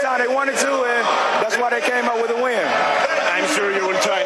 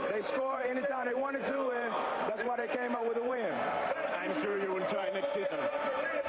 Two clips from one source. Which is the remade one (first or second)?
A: second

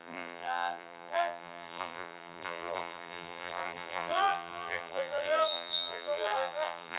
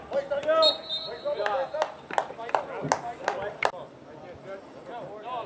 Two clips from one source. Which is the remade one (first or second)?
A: first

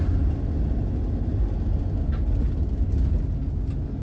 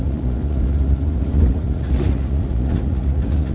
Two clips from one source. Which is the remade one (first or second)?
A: second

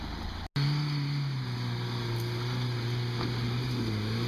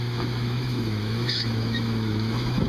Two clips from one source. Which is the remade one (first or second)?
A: second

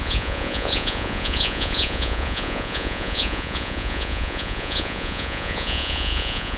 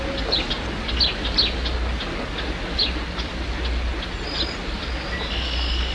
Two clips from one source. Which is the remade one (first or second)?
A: first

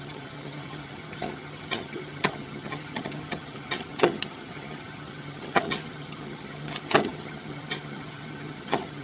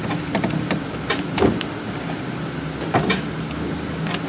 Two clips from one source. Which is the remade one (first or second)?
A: first